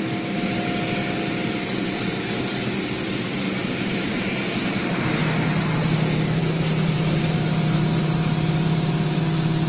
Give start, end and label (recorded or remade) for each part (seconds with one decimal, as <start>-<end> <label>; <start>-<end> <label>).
0.0-3.6 recorded; 3.6-5.1 remade; 5.1-6.4 recorded; 6.4-9.2 remade; 9.2-9.7 recorded